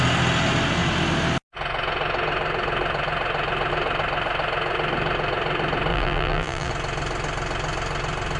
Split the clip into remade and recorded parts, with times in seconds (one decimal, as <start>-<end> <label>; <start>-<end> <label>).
0.0-5.9 recorded; 5.9-6.7 remade; 6.7-8.4 recorded